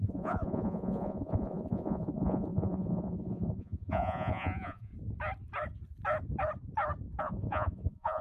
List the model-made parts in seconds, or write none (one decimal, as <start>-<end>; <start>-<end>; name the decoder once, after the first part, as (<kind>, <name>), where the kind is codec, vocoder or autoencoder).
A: 0.0-4.9 (vocoder, Vocos); 7.2-8.2